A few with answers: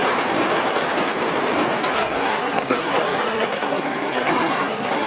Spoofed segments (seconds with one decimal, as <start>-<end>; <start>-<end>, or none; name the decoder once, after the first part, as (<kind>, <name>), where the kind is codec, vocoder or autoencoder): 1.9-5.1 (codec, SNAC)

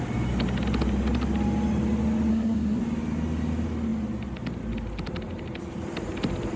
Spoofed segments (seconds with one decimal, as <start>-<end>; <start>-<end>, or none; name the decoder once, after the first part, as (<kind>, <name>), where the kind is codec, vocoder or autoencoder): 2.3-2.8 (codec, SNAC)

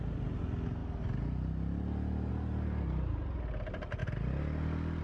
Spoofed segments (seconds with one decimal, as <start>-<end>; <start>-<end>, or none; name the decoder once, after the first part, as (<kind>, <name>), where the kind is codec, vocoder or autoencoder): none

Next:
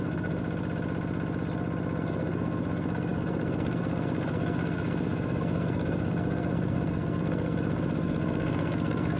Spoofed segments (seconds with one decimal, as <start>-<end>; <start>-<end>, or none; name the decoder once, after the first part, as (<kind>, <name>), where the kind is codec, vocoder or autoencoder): 0.0-0.4 (codec, SNAC); 2.0-9.2

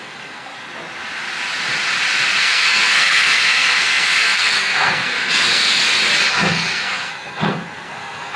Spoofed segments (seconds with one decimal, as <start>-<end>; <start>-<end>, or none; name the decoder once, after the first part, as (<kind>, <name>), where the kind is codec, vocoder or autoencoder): 0.0-0.5 (codec, SNAC); 2.4-5.8; 6.3-8.4